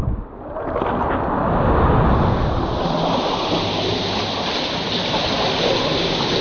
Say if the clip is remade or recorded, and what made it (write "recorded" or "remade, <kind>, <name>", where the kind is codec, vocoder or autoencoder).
recorded